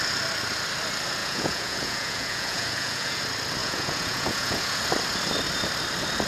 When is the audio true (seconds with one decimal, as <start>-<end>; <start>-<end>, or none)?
0.0-1.2; 3.2-3.6; 4.8-6.3